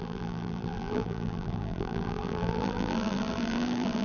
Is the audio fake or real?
fake